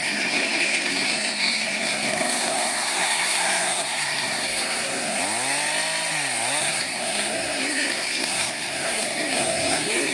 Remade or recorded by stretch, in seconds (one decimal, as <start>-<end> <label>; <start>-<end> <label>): 0.0-5.2 remade; 5.2-6.6 recorded; 6.6-10.1 remade